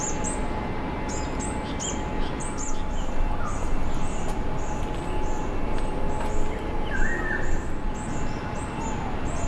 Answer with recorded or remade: recorded